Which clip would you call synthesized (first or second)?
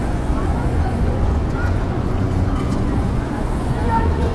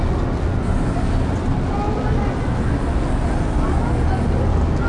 first